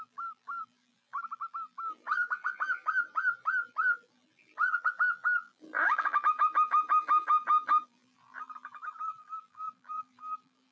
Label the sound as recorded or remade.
remade